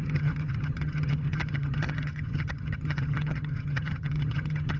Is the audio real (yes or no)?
no